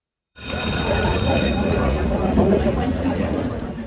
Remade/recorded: remade